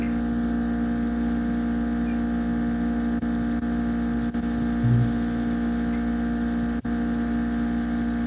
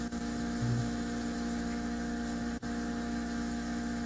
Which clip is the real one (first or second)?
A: first